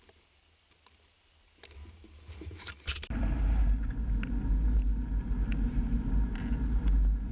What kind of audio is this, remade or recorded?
recorded